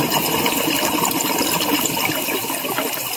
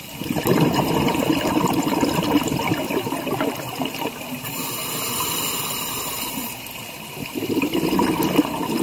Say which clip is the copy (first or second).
second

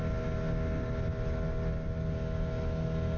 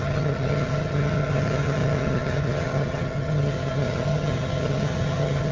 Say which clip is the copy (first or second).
second